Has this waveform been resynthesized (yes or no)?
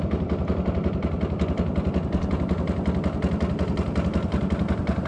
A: no